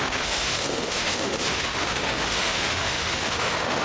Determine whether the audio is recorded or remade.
remade